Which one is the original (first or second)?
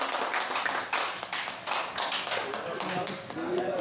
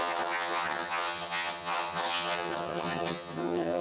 first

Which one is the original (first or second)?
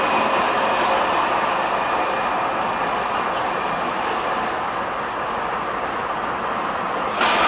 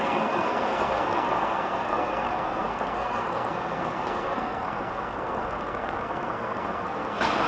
first